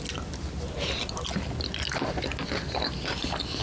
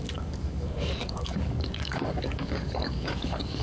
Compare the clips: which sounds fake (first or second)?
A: second